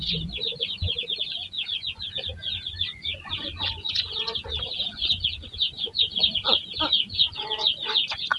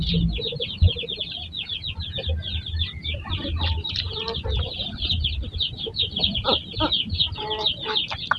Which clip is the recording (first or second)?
second